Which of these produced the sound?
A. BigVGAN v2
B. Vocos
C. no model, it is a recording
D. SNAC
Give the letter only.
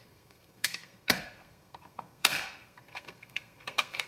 D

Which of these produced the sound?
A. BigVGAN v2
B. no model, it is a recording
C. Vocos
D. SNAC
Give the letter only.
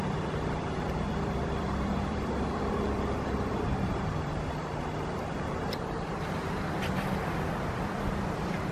A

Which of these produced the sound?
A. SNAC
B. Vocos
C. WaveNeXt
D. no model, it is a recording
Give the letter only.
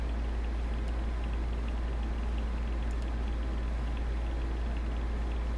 D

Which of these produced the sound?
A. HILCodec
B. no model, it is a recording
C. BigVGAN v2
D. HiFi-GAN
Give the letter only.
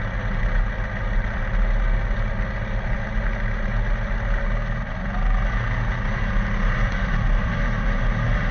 B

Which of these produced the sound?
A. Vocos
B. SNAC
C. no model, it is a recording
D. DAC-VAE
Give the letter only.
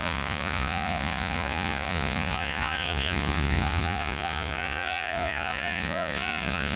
A